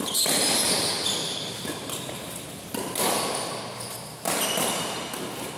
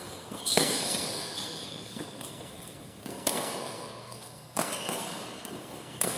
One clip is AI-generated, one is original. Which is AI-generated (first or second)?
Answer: second